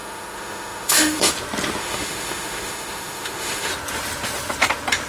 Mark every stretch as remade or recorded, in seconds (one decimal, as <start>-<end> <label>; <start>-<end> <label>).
0.0-1.3 remade; 1.3-1.8 recorded; 1.8-3.7 remade; 3.7-5.1 recorded